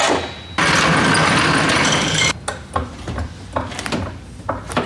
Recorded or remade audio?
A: recorded